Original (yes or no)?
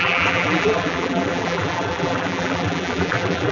no